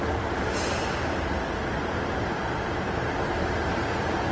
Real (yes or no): yes